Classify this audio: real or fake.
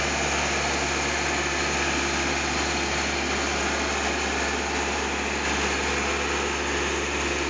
real